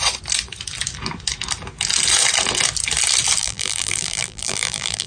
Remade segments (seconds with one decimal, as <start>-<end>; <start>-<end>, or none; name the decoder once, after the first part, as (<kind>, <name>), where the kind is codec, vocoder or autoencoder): 3.4-5.1 (vocoder, BigVGAN v2)